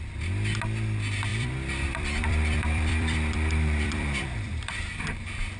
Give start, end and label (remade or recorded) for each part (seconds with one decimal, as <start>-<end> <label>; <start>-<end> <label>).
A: 0.0-1.3 recorded; 1.3-4.7 remade; 4.7-5.6 recorded